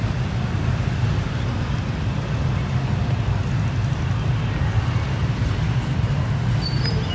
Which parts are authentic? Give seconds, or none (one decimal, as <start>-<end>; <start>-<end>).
0.0-5.2; 6.1-7.1